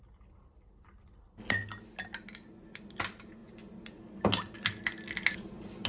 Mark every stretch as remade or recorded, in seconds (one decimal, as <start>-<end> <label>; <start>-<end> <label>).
0.0-5.9 recorded